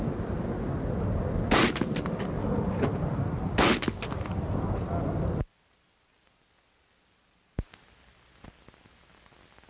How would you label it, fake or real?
real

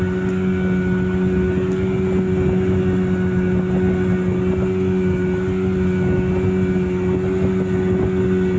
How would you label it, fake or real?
real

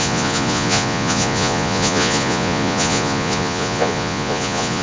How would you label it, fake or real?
fake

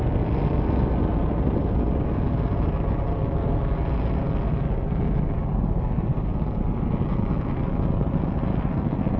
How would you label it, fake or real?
real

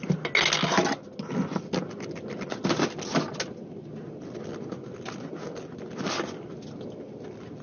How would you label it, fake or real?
real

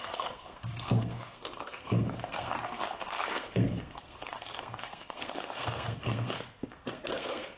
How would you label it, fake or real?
fake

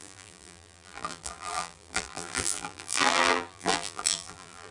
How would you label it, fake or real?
fake